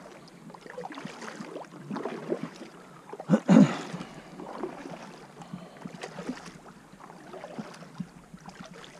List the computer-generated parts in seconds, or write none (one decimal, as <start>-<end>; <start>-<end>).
2.4-4.6